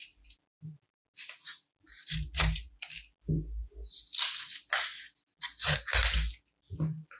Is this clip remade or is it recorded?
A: recorded